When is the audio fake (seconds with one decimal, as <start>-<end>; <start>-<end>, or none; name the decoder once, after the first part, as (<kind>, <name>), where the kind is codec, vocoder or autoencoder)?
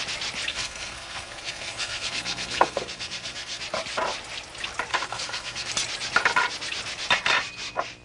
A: 0.5-3.6 (codec, SNAC); 4.9-5.7